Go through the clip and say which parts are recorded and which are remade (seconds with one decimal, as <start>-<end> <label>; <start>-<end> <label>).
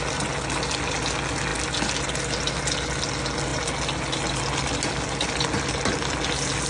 0.0-6.7 recorded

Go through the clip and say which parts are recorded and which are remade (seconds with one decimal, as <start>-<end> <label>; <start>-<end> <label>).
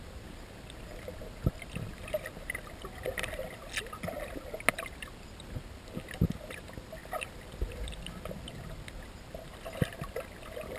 0.0-7.0 recorded; 7.0-8.5 remade; 8.5-10.8 recorded